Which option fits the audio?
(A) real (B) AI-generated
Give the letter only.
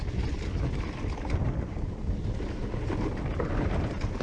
A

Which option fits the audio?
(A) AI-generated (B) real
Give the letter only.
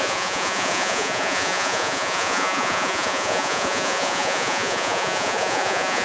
A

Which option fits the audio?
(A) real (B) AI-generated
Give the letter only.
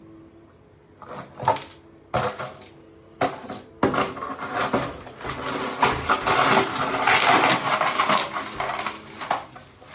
A